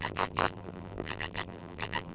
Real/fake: fake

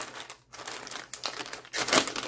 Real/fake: real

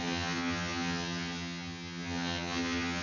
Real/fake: fake